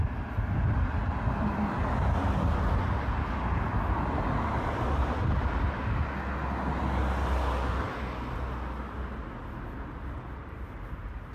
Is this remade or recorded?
recorded